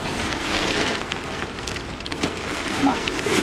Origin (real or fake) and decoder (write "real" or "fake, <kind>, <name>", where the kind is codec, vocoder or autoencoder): fake, codec, SNAC